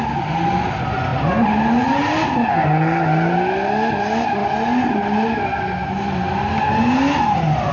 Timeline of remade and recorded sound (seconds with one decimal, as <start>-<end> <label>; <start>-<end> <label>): 0.0-7.7 recorded